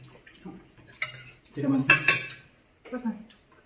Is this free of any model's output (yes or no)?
yes